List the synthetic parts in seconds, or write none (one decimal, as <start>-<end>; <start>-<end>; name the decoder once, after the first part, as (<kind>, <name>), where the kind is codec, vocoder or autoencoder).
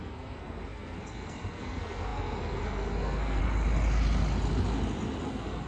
0.0-3.4 (codec, SNAC); 5.3-5.7